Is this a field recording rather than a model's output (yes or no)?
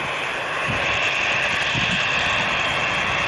yes